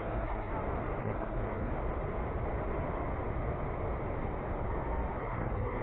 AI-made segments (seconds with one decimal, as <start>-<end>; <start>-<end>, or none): 0.0-0.5; 1.0-1.7; 5.2-5.8